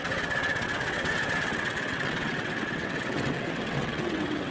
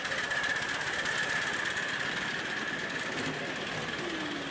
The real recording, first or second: second